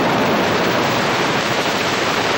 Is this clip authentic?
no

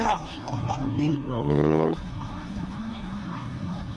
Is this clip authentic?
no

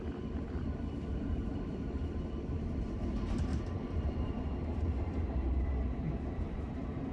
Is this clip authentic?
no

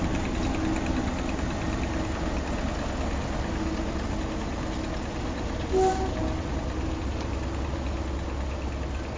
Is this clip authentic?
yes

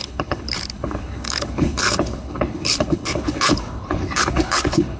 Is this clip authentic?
no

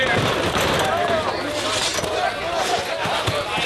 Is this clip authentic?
yes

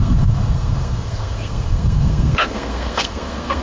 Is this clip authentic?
no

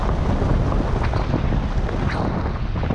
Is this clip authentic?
yes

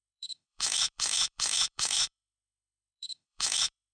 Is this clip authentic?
no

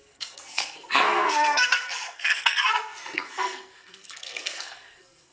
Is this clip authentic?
no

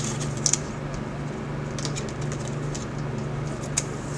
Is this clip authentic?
yes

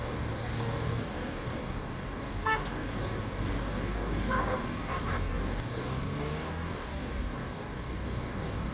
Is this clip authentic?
no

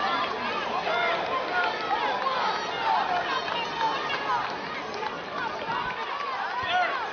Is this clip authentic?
yes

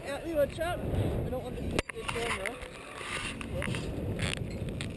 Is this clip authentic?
yes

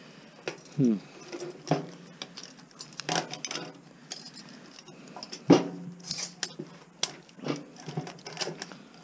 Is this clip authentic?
yes